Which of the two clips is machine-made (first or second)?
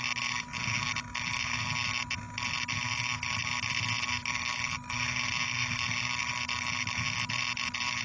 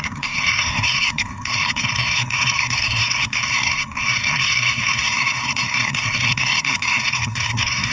second